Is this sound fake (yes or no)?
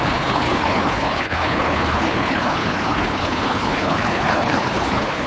yes